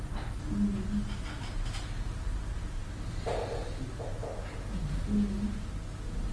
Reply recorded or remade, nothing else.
recorded